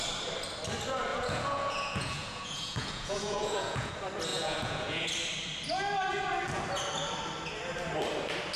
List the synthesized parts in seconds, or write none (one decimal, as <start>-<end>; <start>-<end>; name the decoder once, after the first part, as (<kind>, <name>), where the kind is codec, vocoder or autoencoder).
1.1-3.9 (vocoder, Vocos); 4.3-5.1